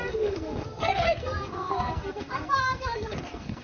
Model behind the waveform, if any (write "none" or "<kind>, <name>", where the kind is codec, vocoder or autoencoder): codec, SNAC